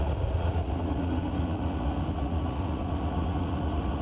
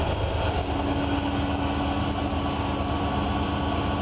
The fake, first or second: first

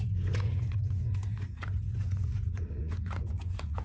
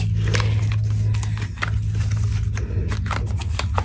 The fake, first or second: first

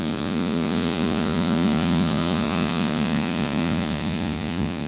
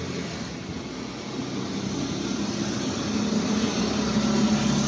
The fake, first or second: first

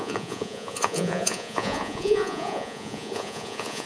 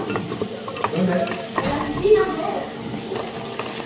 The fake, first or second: first